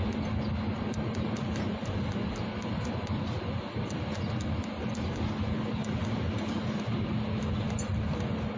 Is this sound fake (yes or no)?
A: no